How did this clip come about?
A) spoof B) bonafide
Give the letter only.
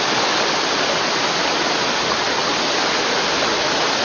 B